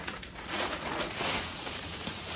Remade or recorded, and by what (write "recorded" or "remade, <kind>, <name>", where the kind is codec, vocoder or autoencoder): remade, vocoder, Vocos